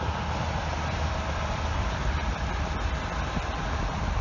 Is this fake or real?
real